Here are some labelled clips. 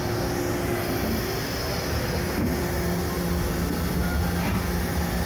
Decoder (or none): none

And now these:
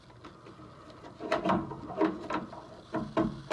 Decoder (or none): none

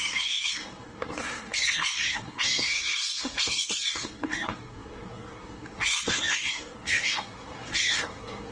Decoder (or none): codec, SNAC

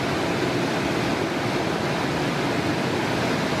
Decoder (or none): none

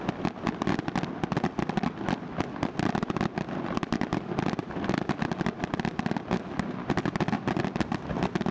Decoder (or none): none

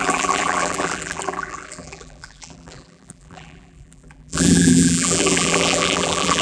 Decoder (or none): vocoder, BigVGAN v2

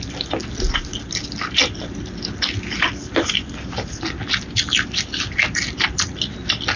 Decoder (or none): none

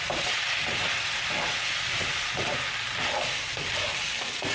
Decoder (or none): none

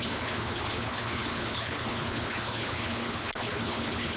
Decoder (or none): codec, HILCodec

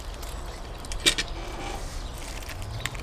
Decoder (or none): none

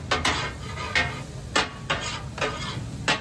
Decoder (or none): none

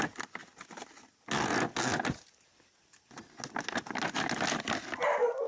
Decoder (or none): none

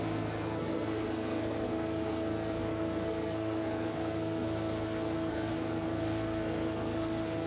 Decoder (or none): codec, SNAC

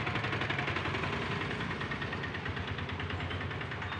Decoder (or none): none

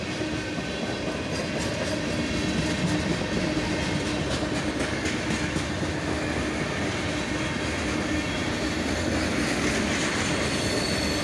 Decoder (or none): none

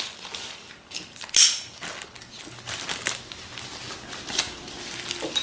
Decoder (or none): none